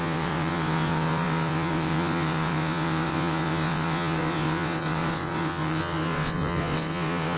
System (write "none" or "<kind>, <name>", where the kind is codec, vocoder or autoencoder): vocoder, WaveNeXt